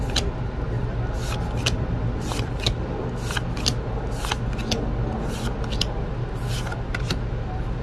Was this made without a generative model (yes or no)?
yes